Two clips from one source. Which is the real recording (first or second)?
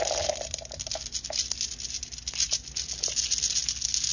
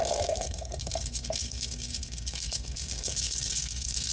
first